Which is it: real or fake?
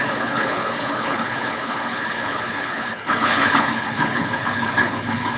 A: fake